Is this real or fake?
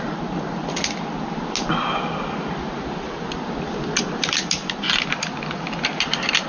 real